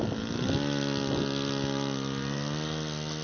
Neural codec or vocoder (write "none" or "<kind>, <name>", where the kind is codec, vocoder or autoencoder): none